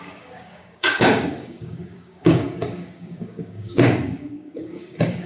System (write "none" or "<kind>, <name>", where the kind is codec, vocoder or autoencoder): codec, DAC